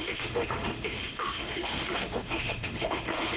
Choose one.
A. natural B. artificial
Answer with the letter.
B